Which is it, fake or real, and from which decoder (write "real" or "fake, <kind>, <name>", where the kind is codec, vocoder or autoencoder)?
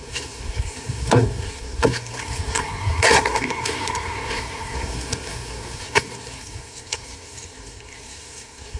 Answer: fake, codec, SNAC